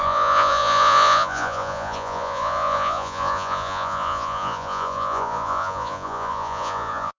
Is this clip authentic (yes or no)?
no